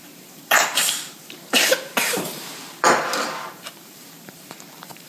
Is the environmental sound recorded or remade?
remade